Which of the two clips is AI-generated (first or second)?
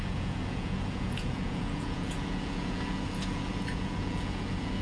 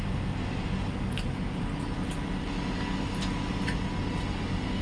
first